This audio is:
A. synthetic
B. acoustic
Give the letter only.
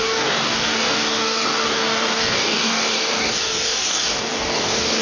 A